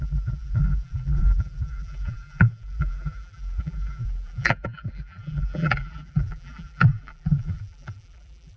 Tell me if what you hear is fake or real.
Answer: fake